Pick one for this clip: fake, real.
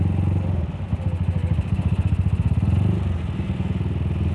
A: real